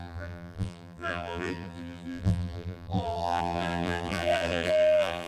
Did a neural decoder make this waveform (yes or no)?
yes